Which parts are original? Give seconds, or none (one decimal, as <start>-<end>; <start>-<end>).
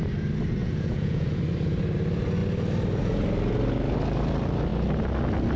0.0-0.6; 1.4-5.6